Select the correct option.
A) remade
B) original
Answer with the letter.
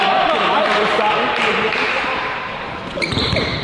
A